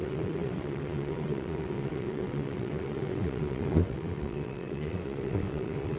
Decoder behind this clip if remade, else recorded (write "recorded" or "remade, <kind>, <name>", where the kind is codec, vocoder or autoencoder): remade, vocoder, WaveNeXt